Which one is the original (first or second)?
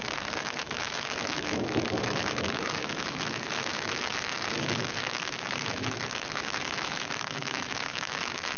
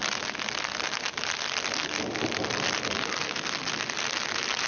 second